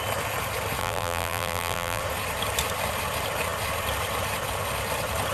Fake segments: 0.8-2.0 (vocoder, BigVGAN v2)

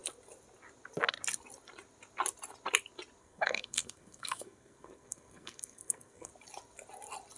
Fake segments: 3.2-6.3 (codec, SNAC)

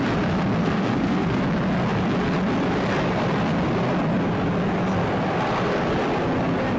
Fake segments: 0.6-1.4 (codec, SNAC)

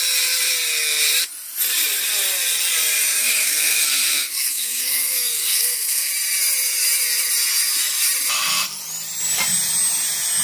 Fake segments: 3.2-6.1 (codec, SNAC)

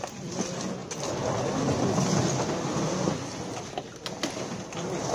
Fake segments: none

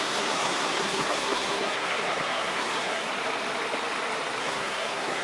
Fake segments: 0.0-3.1 (codec, SNAC); 4.4-5.2